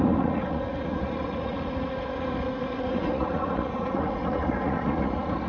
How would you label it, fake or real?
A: fake